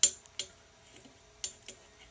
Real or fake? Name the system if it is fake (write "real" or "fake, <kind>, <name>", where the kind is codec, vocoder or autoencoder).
real